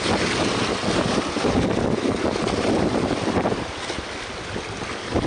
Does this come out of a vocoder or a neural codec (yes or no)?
no